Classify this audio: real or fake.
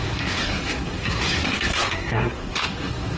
fake